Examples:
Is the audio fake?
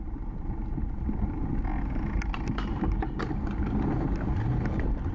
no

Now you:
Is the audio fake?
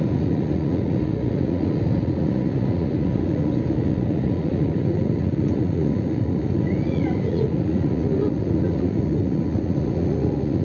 yes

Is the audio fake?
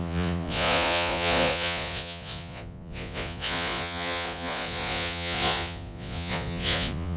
yes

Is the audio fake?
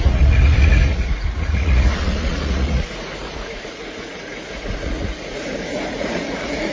yes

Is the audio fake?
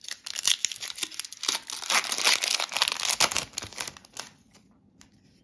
no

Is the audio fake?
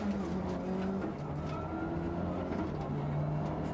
no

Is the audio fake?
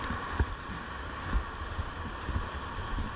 no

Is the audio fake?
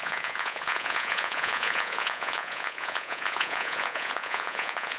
yes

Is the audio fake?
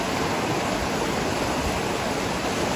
no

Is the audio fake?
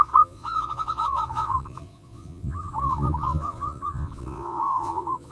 yes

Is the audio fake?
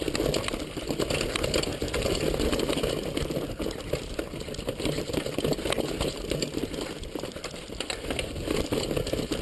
no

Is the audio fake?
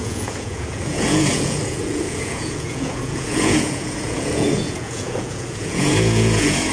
yes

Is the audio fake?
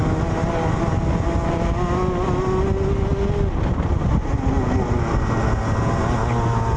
no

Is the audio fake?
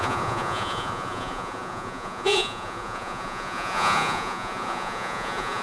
yes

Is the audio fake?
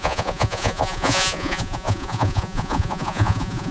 yes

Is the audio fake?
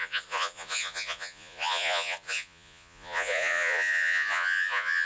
yes